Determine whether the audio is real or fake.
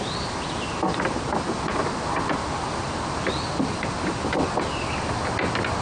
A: real